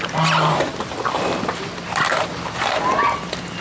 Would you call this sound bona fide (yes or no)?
yes